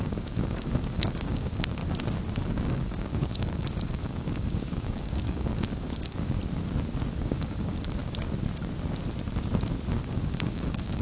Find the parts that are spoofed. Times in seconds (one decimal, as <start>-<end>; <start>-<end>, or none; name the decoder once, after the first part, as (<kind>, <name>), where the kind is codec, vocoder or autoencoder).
0.0-1.8 (codec, DAC); 2.5-6.4; 7.2-8.0; 10.1-11.0